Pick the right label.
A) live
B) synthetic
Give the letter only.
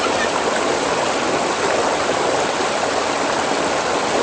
A